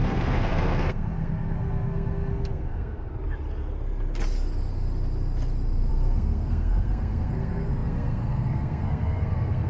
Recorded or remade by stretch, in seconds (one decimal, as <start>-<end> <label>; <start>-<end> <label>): 0.0-3.1 remade; 3.1-5.9 recorded; 5.9-9.7 remade